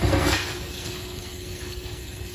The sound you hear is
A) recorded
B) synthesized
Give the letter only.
B